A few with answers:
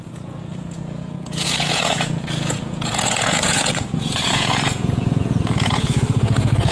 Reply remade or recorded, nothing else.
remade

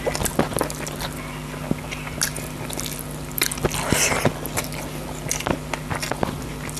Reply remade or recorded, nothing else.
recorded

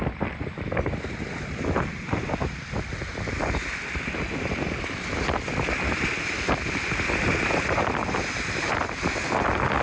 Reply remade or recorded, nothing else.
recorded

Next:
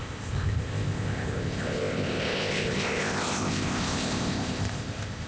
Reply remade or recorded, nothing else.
remade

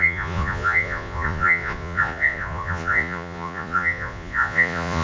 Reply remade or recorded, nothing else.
remade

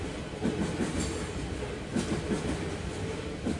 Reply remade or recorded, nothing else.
recorded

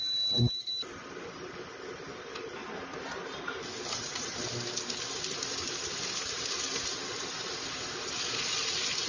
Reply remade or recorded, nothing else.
remade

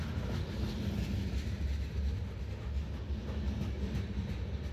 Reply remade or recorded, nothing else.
recorded